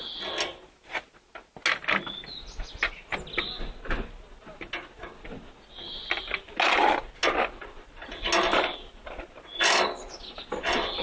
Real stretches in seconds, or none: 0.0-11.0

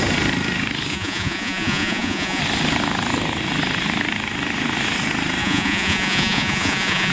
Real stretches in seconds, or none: 0.0-0.9; 2.4-5.4

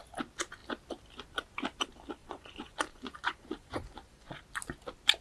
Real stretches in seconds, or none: 0.0-2.2; 4.4-5.2

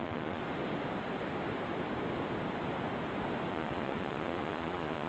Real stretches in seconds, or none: 0.4-3.5

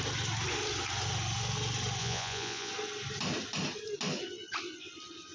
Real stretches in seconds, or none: 0.0-2.0; 2.7-5.3